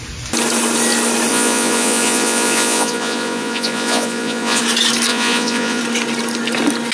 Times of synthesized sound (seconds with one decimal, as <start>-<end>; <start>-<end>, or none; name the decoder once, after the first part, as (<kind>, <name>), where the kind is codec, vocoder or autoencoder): 1.3-4.6 (vocoder, Vocos); 5.1-5.8